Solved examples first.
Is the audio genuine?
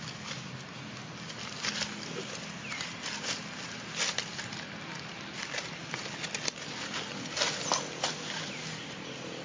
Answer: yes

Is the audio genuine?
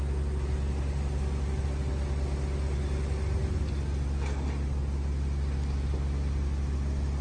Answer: yes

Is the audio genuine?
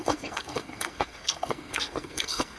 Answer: no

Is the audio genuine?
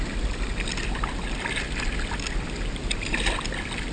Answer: yes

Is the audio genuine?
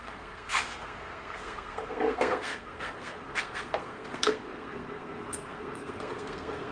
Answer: no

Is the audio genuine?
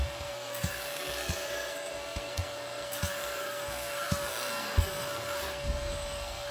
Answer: no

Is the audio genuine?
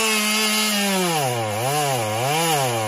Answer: yes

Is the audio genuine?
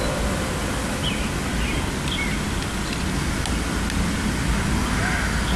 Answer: yes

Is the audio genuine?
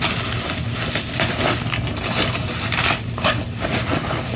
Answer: yes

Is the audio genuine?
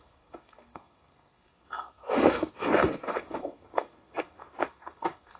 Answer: no